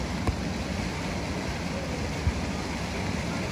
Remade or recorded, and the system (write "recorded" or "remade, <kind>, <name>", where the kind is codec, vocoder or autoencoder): recorded